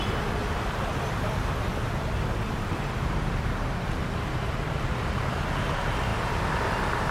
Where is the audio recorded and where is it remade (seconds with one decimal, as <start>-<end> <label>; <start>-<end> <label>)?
0.0-0.4 remade; 0.4-2.5 recorded; 2.5-7.1 remade